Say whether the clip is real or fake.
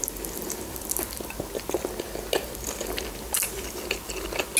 real